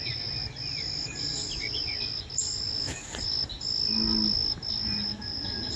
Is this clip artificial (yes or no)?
no